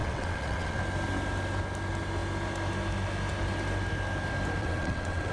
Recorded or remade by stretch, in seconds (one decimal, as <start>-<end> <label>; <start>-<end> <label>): 0.0-0.8 remade; 0.8-4.6 recorded; 4.6-5.3 remade